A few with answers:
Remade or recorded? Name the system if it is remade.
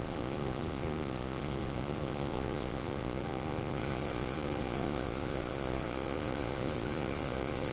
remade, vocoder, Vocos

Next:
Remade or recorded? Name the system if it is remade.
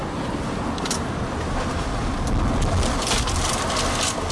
recorded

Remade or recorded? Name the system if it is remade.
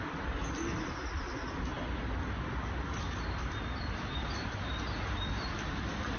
recorded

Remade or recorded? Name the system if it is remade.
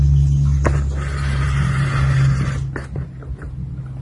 recorded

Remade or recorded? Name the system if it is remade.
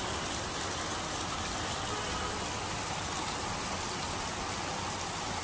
recorded